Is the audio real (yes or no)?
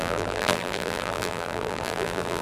no